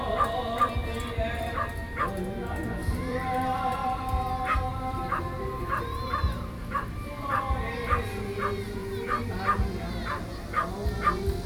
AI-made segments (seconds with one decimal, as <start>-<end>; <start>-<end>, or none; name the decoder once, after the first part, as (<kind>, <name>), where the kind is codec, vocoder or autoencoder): 2.8-4.0 (vocoder, BigVGAN v2); 4.7-8.0; 8.8-9.3